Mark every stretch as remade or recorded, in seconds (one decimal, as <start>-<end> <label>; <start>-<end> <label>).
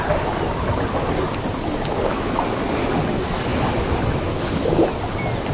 0.0-5.5 recorded